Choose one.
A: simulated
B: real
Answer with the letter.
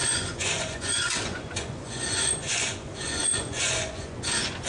A